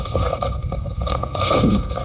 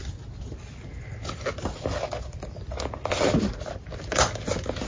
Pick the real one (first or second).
second